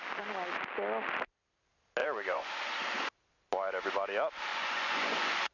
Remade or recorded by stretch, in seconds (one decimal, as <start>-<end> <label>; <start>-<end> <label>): 0.0-2.0 recorded; 2.0-2.5 remade; 2.5-4.5 recorded; 4.5-5.5 remade